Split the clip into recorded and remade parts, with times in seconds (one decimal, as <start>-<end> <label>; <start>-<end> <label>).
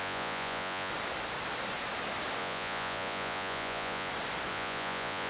0.0-0.9 remade; 0.9-2.4 recorded; 2.4-4.1 remade; 4.1-4.5 recorded; 4.5-5.3 remade